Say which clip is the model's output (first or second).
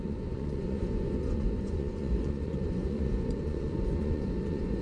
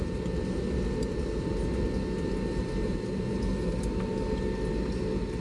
first